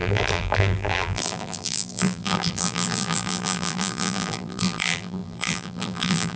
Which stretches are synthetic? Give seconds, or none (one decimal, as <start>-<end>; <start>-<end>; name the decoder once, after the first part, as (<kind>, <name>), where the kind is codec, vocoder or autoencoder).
0.0-6.4 (vocoder, BigVGAN v2)